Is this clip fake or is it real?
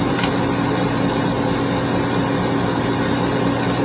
real